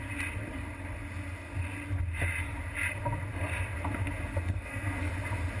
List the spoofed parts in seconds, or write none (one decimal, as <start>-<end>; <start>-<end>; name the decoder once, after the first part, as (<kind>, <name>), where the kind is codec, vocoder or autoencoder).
4.3-5.1 (codec, SNAC)